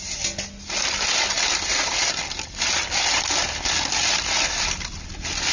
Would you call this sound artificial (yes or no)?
no